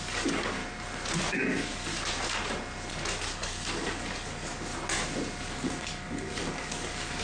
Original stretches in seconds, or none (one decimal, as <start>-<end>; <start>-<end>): 0.6-1.3; 1.9-3.2; 4.7-5.5